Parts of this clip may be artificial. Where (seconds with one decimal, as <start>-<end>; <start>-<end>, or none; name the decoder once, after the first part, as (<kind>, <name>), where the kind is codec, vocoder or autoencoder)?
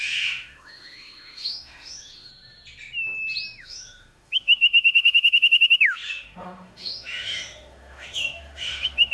0.0-2.3 (autoencoder, DAC-VAE); 3.6-9.1